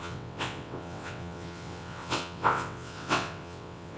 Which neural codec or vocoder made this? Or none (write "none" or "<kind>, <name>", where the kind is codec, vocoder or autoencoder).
vocoder, WaveNeXt